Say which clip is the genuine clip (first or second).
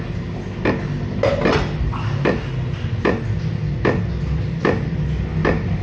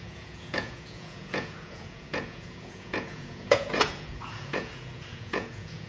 first